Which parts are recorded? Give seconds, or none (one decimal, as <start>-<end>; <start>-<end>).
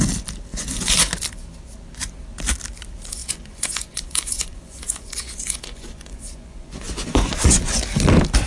0.0-0.5; 1.1-3.2; 7.8-8.5